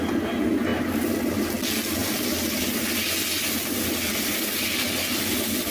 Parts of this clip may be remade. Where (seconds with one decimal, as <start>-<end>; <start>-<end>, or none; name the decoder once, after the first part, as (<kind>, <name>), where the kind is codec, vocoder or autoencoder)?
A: none